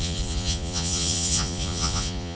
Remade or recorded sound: remade